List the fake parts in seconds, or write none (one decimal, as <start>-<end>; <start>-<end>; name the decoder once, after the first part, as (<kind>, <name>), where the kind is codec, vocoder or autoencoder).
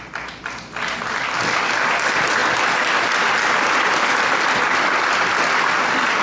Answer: 2.4-6.2 (vocoder, BigVGAN v2)